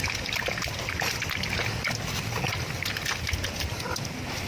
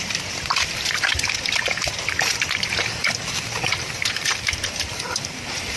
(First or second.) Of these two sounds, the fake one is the second